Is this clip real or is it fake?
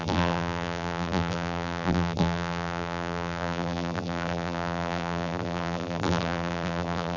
fake